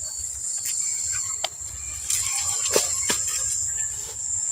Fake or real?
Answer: real